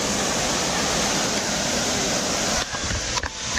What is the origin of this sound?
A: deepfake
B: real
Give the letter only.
A